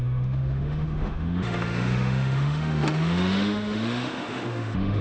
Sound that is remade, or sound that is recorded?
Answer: remade